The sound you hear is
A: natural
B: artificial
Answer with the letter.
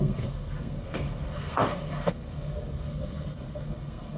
B